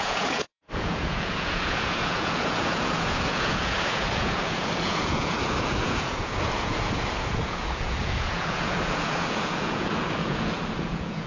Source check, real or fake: fake